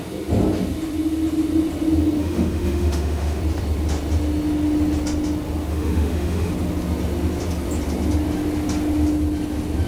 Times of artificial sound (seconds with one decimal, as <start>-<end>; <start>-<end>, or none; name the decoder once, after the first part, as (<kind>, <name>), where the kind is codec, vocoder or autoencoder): 2.2-3.4 (autoencoder, DAC-VAE); 5.7-6.5